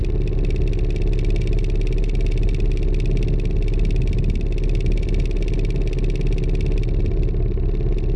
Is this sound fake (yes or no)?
no